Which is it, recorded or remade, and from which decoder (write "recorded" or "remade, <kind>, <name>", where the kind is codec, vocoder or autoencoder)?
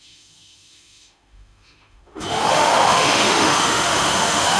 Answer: remade, autoencoder, DAC-VAE